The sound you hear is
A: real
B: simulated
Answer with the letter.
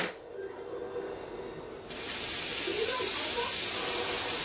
B